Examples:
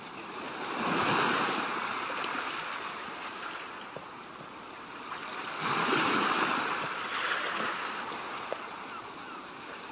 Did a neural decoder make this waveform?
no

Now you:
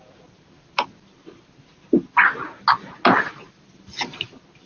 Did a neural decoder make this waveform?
no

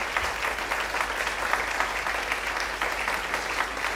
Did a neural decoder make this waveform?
no